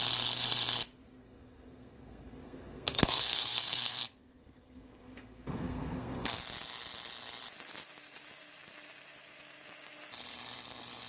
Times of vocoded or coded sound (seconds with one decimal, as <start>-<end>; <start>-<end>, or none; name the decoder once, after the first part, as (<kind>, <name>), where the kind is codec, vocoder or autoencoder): 1.2-6.4 (codec, SNAC)